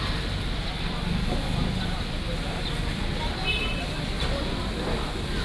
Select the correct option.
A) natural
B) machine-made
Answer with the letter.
A